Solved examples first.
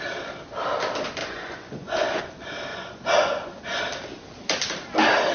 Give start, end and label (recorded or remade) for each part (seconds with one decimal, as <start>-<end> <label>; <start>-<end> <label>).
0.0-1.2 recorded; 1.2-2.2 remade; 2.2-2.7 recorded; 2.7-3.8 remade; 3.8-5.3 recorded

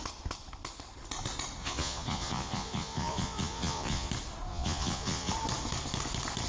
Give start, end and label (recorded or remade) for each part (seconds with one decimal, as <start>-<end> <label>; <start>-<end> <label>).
0.0-1.6 recorded; 1.6-4.1 remade; 4.1-4.5 recorded; 4.5-5.3 remade; 5.3-6.5 recorded

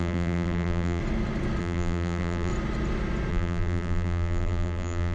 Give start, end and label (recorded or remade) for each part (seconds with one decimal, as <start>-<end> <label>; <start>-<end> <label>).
0.0-1.0 remade; 1.0-1.6 recorded; 1.6-2.5 remade; 2.5-3.3 recorded; 3.3-5.1 remade